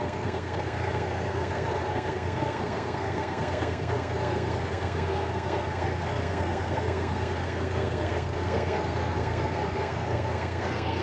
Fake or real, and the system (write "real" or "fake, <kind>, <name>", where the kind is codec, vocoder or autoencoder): fake, codec, SNAC